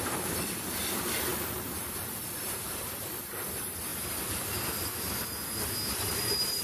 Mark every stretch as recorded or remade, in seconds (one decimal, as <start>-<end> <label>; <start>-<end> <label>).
0.0-3.9 remade; 3.9-6.1 recorded; 6.1-6.6 remade